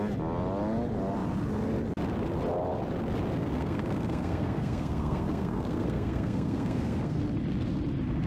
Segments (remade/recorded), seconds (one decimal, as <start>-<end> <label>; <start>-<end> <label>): 0.0-3.4 recorded; 3.4-7.2 remade; 7.2-8.3 recorded